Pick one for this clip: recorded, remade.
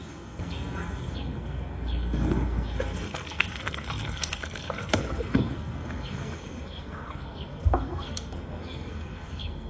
remade